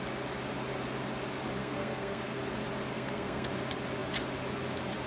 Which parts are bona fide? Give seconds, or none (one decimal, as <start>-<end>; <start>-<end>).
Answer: 0.0-1.6; 2.4-2.9; 3.5-5.1